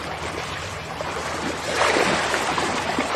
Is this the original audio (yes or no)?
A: yes